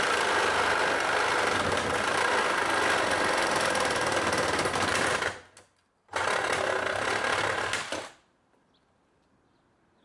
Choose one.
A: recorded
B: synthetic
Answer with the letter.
A